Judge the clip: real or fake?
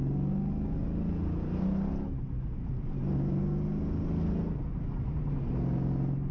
real